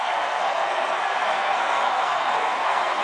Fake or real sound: fake